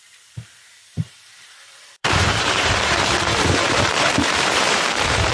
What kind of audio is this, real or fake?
fake